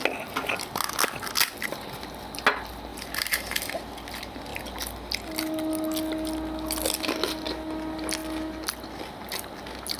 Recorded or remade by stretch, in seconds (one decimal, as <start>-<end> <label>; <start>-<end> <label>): 0.0-2.9 recorded; 2.9-3.6 remade; 3.6-10.0 recorded